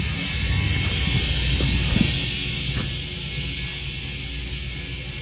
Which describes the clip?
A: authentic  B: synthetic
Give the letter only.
A